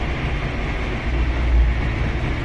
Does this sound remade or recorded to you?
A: recorded